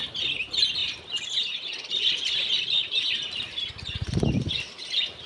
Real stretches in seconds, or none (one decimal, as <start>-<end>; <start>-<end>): 0.0-0.8; 1.4-2.8; 3.7-5.3